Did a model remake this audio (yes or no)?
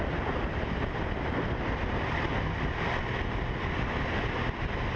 no